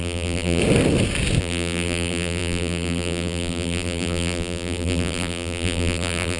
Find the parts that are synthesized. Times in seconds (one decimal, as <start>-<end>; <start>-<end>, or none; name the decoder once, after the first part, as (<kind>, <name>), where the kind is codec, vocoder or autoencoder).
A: 0.0-0.6 (vocoder, BigVGAN v2); 1.4-6.4